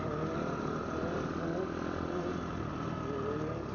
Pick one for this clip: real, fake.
fake